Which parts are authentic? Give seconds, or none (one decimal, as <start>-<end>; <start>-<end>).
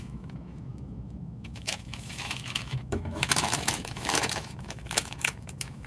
none